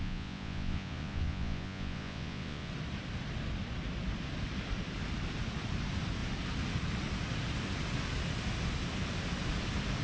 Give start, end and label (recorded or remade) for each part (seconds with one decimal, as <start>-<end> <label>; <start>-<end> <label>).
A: 0.0-2.7 remade; 2.7-10.0 recorded